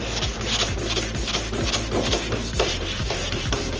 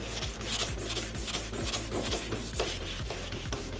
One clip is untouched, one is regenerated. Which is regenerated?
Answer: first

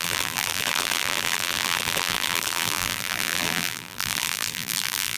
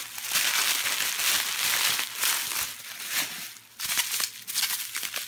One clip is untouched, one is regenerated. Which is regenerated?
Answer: first